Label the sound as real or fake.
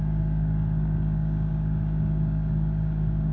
fake